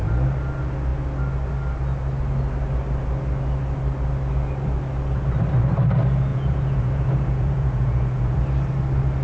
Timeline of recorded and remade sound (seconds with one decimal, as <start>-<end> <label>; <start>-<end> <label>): 0.0-6.3 recorded; 6.3-8.4 remade; 8.4-9.2 recorded